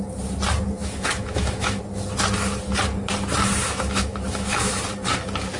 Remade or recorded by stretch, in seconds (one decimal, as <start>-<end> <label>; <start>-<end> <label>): 0.0-0.8 recorded; 0.8-1.8 remade; 1.8-3.6 recorded; 3.6-4.8 remade; 4.8-5.6 recorded